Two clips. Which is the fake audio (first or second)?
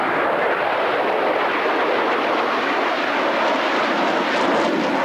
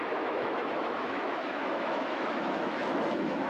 second